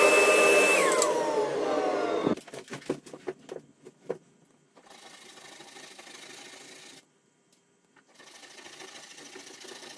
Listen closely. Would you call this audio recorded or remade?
recorded